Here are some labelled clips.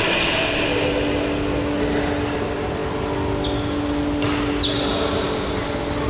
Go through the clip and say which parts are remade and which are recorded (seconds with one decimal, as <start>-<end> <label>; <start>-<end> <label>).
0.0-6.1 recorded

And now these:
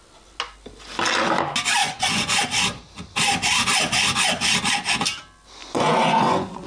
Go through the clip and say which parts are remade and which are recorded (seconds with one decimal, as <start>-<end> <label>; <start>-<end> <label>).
0.0-1.8 recorded; 1.8-2.4 remade; 2.4-5.6 recorded; 5.6-6.7 remade

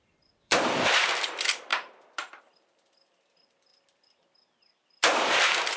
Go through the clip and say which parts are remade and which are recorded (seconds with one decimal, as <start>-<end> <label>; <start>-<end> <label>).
0.0-5.8 remade

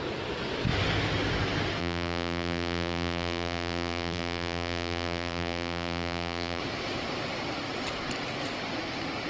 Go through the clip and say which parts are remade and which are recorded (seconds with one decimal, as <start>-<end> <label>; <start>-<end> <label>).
0.0-1.8 recorded; 1.8-6.6 remade; 6.6-9.3 recorded